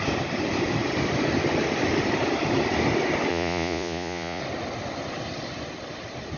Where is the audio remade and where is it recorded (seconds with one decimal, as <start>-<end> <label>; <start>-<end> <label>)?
0.0-3.3 recorded; 3.3-4.4 remade; 4.4-6.4 recorded